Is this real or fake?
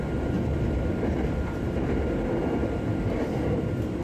real